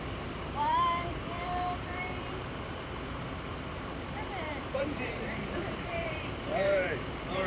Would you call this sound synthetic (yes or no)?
yes